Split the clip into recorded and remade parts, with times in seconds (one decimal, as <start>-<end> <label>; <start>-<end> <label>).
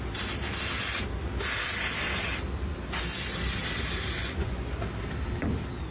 0.0-4.2 recorded; 4.2-4.8 remade; 4.8-5.9 recorded